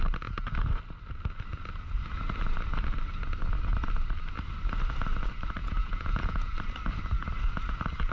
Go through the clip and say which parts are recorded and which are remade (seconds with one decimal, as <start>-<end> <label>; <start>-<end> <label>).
0.0-5.6 recorded; 5.6-6.5 remade; 6.5-8.1 recorded